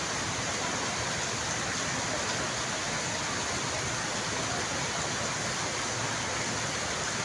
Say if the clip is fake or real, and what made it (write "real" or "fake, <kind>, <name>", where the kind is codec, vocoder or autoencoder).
real